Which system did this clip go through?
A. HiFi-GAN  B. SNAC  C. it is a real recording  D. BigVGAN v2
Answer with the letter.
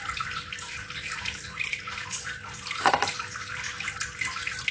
C